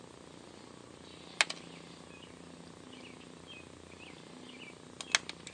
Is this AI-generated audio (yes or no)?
no